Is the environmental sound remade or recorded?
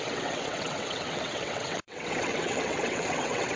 remade